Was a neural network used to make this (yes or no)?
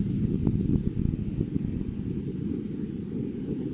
no